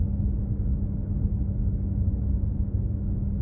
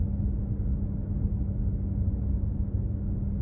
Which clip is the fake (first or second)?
first